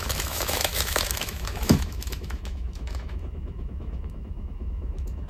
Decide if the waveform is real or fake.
fake